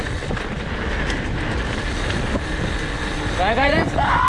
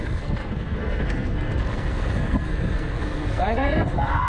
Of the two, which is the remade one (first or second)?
second